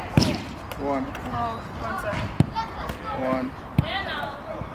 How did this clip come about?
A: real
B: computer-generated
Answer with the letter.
A